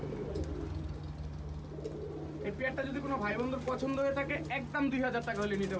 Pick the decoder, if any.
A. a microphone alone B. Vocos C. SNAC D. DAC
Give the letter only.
A